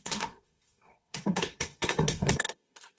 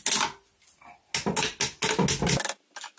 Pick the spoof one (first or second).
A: first